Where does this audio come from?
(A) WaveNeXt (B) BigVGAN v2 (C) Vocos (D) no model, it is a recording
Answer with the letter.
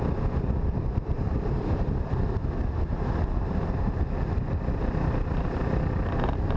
B